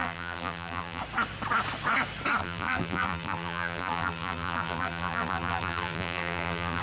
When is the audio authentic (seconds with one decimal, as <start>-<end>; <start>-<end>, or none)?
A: 1.0-2.4